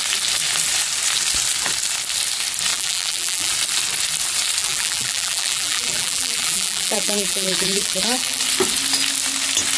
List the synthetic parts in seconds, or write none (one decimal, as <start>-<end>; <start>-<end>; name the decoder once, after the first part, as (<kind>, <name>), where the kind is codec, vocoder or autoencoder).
2.7-3.5 (vocoder, BigVGAN v2); 4.6-8.4